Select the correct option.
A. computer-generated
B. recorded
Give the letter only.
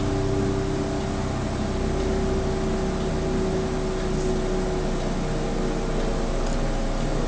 B